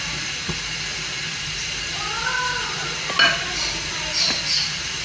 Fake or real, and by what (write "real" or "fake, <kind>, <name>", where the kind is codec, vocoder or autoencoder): real